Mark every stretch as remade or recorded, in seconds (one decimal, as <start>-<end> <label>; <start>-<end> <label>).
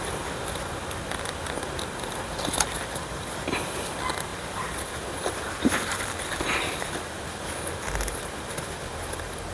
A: 0.0-4.3 recorded; 4.3-6.9 remade; 6.9-9.5 recorded